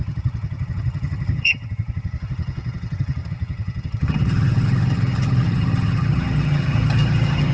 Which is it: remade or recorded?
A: remade